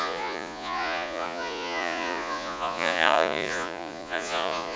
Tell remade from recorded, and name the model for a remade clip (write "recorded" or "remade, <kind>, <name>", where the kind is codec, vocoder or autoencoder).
remade, vocoder, Vocos